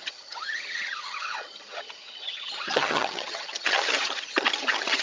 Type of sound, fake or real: fake